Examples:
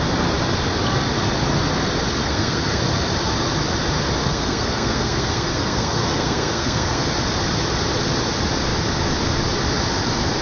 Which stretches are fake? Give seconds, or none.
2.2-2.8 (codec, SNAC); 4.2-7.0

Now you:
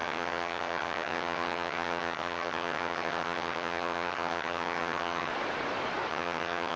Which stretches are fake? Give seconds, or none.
0.0-5.3 (vocoder, HiFi-GAN); 6.1-6.8

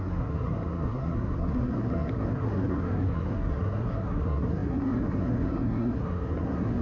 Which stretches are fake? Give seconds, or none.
0.0-6.8 (codec, SNAC)

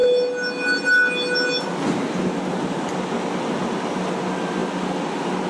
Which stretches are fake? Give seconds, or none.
none

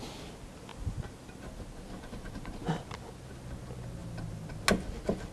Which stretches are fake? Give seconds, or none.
none

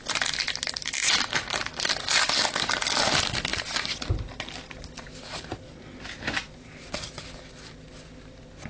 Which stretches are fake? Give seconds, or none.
none